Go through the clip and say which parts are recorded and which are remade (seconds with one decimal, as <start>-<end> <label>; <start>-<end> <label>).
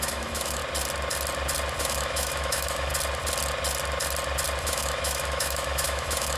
0.0-0.6 remade; 0.6-1.8 recorded; 1.8-2.9 remade; 2.9-4.6 recorded; 4.6-6.4 remade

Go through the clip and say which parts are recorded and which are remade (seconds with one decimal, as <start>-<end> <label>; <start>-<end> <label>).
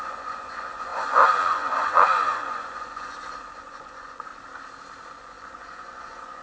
0.0-4.3 remade; 4.3-5.1 recorded; 5.1-6.4 remade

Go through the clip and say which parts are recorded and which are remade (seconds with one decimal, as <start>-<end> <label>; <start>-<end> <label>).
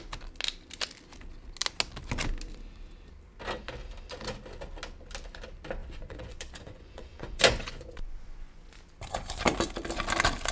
0.0-5.8 recorded; 5.8-8.8 remade; 8.8-10.5 recorded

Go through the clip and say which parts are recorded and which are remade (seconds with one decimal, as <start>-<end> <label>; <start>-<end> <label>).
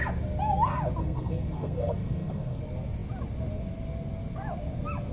0.0-1.0 recorded; 1.0-2.6 remade; 2.6-5.1 recorded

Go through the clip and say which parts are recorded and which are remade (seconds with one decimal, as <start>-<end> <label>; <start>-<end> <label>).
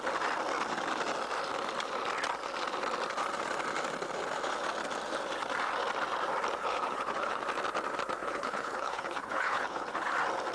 0.0-6.6 recorded; 6.6-7.4 remade; 7.4-8.2 recorded; 8.2-10.1 remade; 10.1-10.5 recorded